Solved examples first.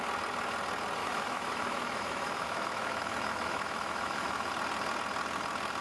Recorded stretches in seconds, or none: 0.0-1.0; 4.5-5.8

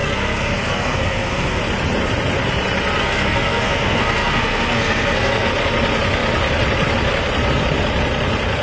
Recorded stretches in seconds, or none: 1.6-3.0; 5.5-8.6

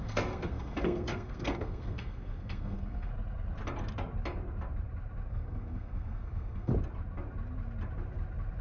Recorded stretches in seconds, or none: 3.1-5.3; 6.7-8.6

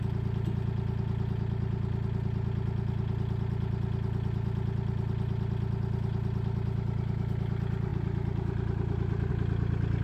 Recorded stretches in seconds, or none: 0.0-7.9; 9.3-10.0

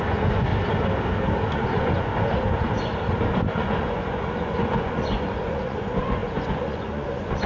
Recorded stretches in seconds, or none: 0.5-1.5; 2.1-3.5

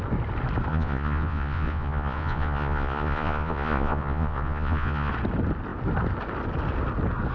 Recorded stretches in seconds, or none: 0.0-0.7; 5.1-7.3